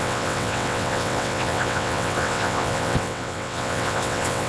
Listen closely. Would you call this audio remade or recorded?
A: remade